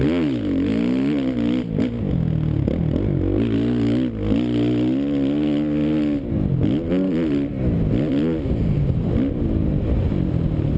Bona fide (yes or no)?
yes